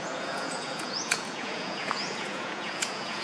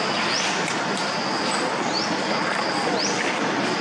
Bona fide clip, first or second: second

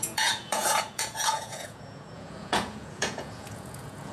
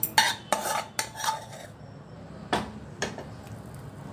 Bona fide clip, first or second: second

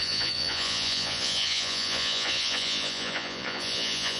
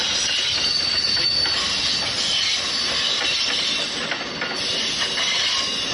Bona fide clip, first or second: second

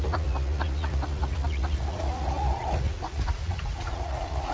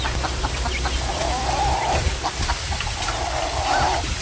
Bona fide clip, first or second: second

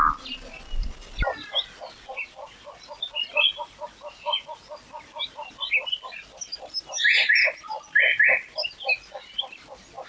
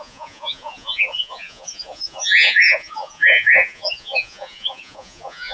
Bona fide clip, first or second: first